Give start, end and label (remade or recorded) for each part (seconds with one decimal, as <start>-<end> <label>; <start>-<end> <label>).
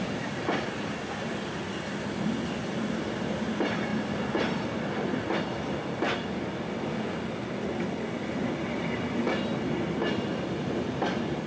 0.0-11.5 recorded